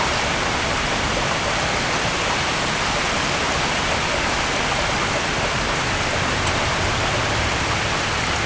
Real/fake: real